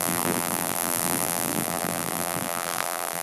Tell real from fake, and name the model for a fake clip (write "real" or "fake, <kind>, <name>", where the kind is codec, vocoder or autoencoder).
fake, vocoder, BigVGAN v2